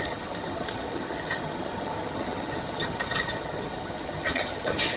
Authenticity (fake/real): fake